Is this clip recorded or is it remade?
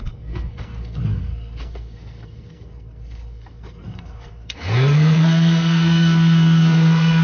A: remade